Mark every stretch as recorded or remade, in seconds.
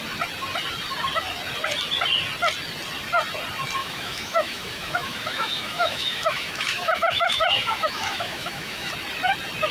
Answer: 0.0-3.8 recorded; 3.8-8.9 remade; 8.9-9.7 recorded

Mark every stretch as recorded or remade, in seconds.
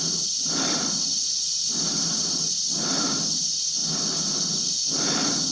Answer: 0.0-5.5 recorded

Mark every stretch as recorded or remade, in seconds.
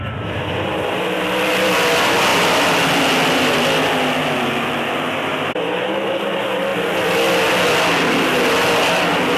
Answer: 0.0-9.4 recorded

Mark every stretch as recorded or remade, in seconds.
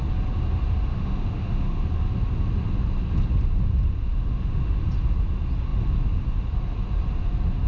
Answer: 0.0-0.9 recorded; 0.9-1.8 remade; 1.8-4.0 recorded; 4.0-4.7 remade; 4.7-7.7 recorded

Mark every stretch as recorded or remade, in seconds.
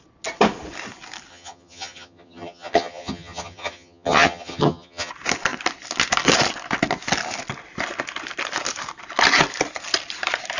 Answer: 0.0-1.3 recorded; 1.3-5.1 remade; 5.1-10.6 recorded